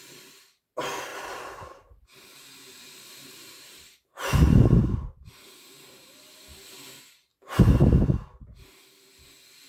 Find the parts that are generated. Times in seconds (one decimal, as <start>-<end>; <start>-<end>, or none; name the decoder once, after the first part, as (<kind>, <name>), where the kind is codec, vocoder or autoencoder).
1.1-6.2 (vocoder, BigVGAN v2)